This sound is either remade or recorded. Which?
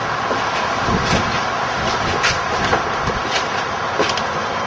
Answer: recorded